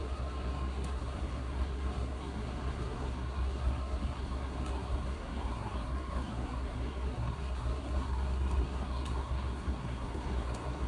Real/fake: fake